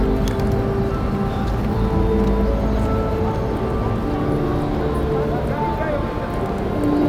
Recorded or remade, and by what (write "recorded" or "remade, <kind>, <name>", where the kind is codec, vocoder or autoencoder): recorded